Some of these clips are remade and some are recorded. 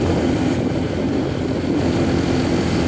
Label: recorded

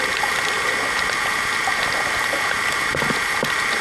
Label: recorded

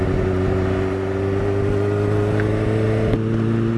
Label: recorded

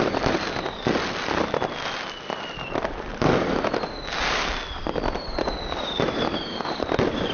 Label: recorded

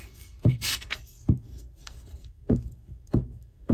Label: remade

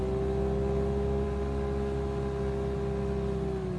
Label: recorded